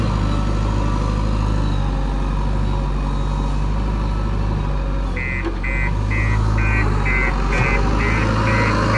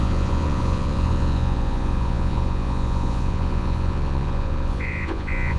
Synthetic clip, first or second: second